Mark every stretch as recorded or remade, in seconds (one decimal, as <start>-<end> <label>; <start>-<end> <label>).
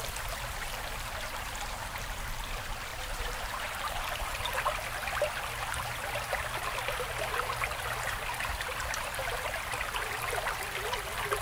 0.0-2.9 recorded; 2.9-4.4 remade; 4.4-11.4 recorded